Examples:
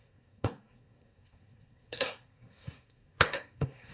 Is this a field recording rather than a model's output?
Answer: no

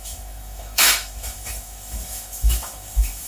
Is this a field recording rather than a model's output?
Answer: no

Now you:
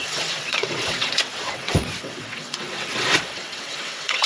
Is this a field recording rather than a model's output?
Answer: no